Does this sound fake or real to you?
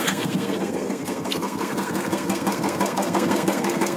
fake